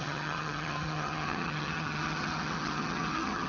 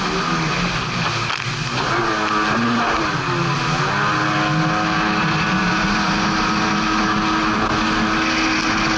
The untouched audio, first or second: second